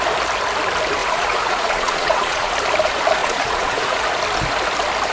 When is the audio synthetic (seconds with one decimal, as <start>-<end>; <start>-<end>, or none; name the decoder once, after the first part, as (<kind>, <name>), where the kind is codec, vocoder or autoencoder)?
1.0-2.5 (vocoder, Vocos); 3.2-4.0